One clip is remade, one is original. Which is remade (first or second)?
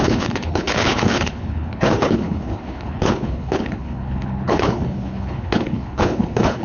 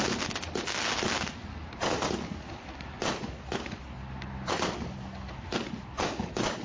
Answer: first